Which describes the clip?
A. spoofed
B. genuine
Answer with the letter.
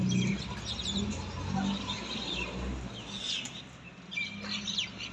B